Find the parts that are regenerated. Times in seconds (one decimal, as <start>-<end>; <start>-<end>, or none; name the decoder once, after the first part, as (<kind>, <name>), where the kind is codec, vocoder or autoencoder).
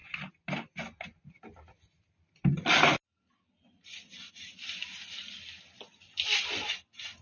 none